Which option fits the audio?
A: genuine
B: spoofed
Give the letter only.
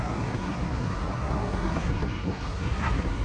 B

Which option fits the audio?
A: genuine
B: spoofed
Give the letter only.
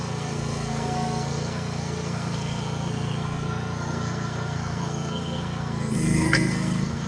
B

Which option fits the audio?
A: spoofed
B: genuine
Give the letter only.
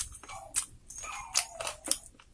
A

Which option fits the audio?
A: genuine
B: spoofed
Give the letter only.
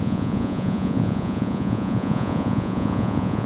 B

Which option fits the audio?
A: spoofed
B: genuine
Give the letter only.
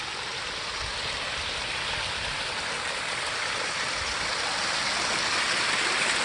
B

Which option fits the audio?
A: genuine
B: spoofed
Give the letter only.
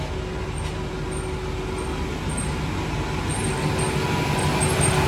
A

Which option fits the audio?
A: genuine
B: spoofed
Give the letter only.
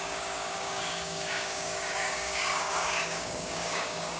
B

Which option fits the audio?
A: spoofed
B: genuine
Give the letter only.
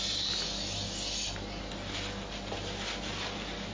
B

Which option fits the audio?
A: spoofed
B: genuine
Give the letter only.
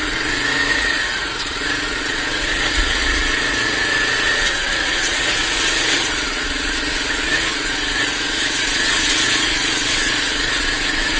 A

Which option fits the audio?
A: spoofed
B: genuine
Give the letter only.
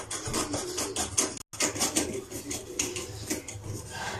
B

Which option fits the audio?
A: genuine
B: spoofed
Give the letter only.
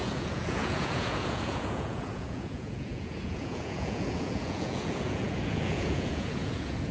B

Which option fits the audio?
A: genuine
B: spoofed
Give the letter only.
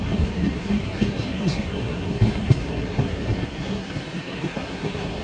B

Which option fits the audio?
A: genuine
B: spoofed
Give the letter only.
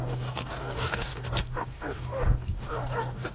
B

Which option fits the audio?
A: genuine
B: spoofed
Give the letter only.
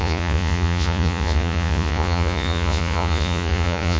B